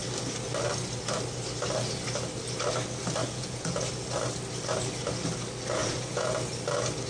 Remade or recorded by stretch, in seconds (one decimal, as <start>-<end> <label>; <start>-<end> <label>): 0.0-3.2 recorded; 3.2-3.9 remade; 3.9-5.8 recorded; 5.8-6.3 remade; 6.3-7.1 recorded